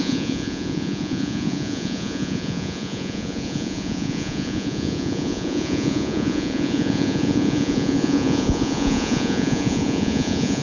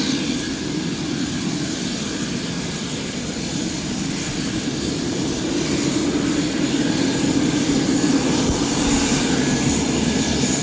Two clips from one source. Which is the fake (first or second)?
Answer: first